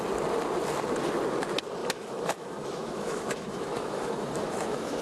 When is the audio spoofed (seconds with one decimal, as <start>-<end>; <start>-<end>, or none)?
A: 1.8-5.0